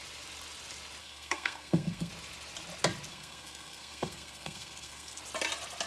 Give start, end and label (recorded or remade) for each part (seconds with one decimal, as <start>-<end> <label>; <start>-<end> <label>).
0.0-1.0 recorded; 1.0-2.1 remade; 2.1-3.1 recorded; 3.1-5.2 remade; 5.2-5.9 recorded